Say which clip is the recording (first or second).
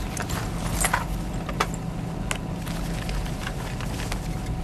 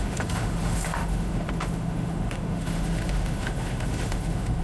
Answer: first